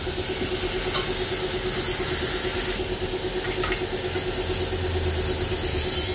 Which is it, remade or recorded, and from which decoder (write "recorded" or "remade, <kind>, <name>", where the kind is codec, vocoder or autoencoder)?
recorded